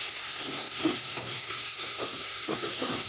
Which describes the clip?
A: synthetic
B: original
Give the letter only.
A